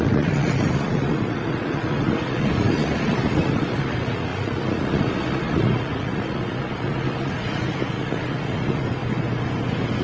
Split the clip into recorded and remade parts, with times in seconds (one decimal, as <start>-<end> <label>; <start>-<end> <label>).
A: 0.0-9.0 remade; 9.0-10.0 recorded